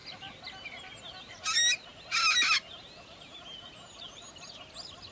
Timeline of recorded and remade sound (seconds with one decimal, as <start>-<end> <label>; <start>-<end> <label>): 0.0-5.1 recorded

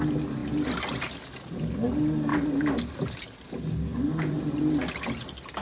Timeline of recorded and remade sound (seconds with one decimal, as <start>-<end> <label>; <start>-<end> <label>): 0.0-3.9 recorded; 3.9-4.6 remade; 4.6-5.6 recorded

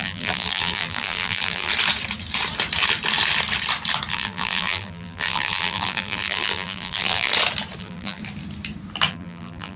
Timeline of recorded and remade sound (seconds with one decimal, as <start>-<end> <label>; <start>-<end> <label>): 0.0-1.7 remade; 1.7-4.1 recorded; 4.1-7.3 remade; 7.3-7.8 recorded; 7.8-8.2 remade; 8.2-9.1 recorded; 9.1-9.8 remade

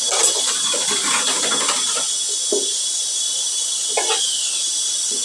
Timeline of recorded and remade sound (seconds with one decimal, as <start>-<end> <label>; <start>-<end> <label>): 0.0-1.0 remade; 1.0-4.1 recorded; 4.1-5.2 remade